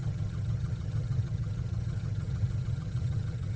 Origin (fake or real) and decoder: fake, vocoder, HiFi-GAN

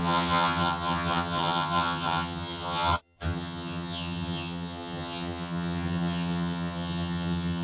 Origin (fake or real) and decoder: fake, vocoder, HiFi-GAN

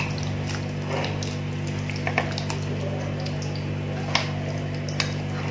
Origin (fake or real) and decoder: real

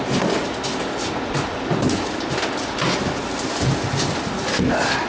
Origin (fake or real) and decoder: real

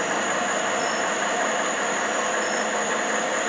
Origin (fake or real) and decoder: real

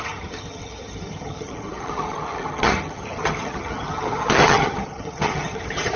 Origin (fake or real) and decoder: fake, vocoder, HiFi-GAN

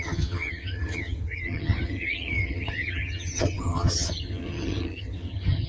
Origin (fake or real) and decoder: fake, vocoder, HiFi-GAN